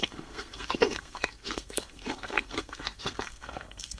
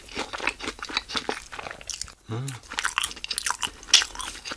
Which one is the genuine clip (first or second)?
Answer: second